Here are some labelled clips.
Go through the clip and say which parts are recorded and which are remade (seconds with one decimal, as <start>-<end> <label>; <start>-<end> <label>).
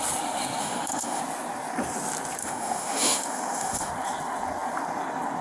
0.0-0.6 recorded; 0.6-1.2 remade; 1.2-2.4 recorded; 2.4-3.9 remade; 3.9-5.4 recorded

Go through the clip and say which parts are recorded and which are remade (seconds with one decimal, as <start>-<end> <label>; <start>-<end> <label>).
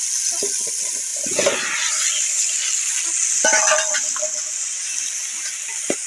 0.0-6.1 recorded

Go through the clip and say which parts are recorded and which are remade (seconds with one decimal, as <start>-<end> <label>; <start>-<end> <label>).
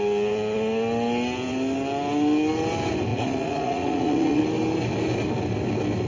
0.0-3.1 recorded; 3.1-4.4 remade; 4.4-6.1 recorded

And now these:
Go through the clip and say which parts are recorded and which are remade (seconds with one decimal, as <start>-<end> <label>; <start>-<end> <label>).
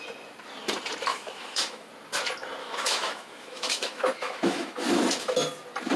0.0-1.1 recorded; 1.1-1.9 remade; 1.9-2.6 recorded; 2.6-5.3 remade; 5.3-6.0 recorded